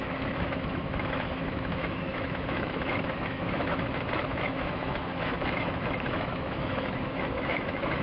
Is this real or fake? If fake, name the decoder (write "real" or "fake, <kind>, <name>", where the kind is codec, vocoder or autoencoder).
fake, autoencoder, DAC-VAE